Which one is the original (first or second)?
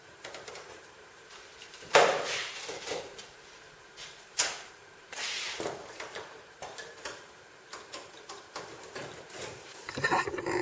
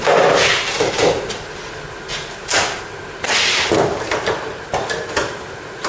second